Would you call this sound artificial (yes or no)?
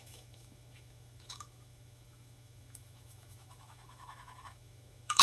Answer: yes